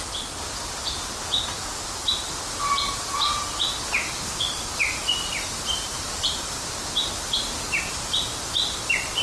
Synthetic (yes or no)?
no